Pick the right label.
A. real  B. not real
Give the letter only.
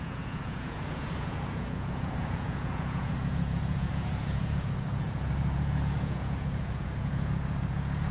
B